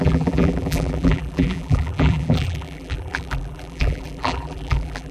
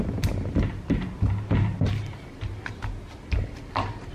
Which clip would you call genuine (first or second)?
second